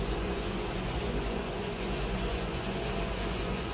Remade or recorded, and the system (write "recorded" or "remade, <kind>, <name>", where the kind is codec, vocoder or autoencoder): remade, vocoder, Vocos